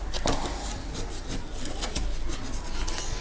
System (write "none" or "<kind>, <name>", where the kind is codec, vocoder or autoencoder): none